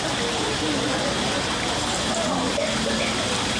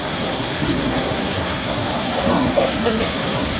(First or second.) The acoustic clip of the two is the first